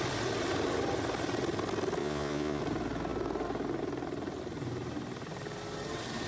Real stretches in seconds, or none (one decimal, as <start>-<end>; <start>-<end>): 0.0-2.0; 2.6-6.3